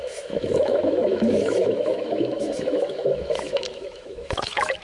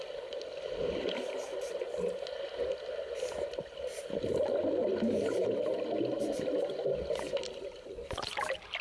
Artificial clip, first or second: first